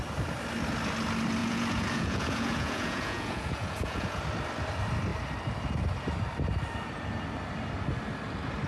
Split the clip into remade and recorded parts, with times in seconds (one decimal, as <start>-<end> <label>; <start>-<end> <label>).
0.0-1.4 recorded; 1.4-4.2 remade; 4.2-8.7 recorded